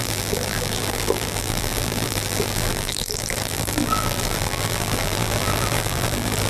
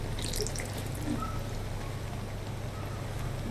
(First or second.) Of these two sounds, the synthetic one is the first